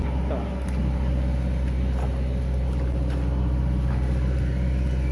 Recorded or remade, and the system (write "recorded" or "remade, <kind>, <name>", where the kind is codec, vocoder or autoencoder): recorded